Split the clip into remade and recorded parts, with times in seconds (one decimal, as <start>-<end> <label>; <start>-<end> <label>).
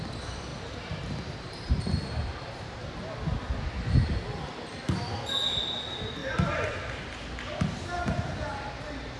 0.0-0.5 recorded; 0.5-2.8 remade; 2.8-6.2 recorded; 6.2-7.0 remade; 7.0-9.2 recorded